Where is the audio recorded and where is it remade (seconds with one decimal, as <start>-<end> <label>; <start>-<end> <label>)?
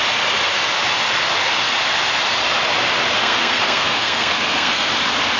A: 0.0-3.2 recorded; 3.2-4.9 remade; 4.9-5.4 recorded